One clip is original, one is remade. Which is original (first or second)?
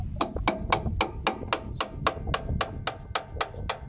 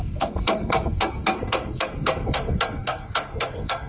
first